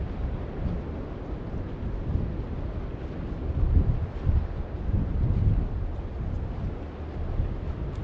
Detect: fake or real real